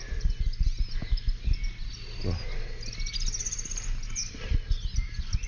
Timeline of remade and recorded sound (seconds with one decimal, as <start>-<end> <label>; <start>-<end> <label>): 0.0-5.5 recorded